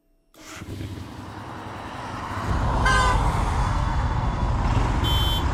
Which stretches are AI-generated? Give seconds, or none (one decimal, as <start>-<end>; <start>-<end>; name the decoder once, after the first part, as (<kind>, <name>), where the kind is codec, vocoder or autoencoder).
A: 3.6-4.5 (codec, SNAC)